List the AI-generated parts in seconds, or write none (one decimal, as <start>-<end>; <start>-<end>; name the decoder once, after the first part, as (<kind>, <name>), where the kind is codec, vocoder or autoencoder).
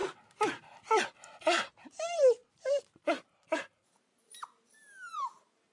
1.8-5.7 (vocoder, BigVGAN v2)